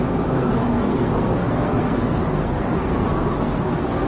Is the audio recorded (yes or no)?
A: no